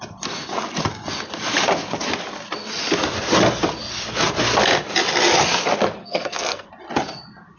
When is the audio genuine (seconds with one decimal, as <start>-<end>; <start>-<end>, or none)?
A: 0.0-6.0; 6.7-7.6